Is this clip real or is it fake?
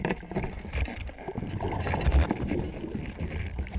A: fake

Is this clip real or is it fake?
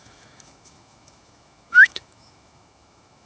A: fake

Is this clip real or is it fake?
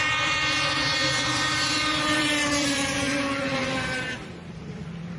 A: fake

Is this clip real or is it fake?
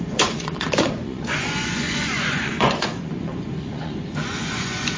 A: fake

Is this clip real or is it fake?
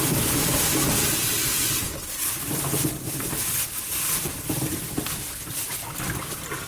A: real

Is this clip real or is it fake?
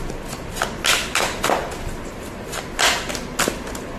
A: real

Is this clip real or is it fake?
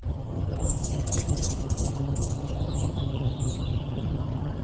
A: fake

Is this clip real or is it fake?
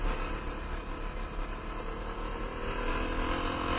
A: real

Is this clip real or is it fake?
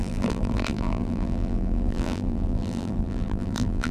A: fake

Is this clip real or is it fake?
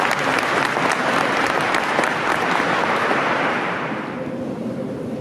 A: real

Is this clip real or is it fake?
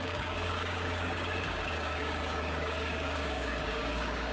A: fake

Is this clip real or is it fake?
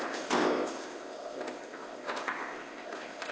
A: fake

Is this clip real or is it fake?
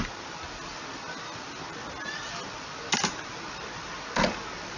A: real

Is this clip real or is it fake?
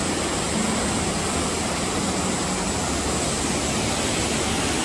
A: real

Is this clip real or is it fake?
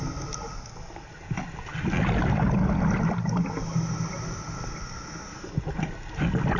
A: real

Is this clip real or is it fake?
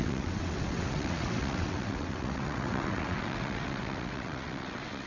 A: fake